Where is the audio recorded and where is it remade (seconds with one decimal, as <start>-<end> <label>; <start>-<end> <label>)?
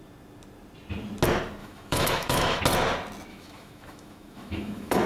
0.0-1.6 recorded; 1.6-2.6 remade; 2.6-3.3 recorded; 3.3-5.1 remade